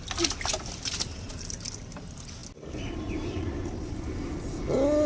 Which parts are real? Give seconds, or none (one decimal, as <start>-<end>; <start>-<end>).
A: 0.0-5.1